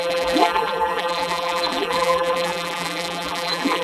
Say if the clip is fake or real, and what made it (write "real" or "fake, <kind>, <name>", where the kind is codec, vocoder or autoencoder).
fake, vocoder, BigVGAN v2